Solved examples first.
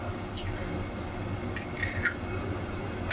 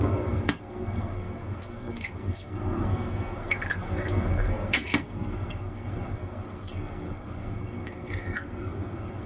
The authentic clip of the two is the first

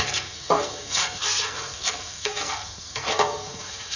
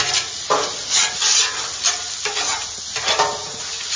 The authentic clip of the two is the second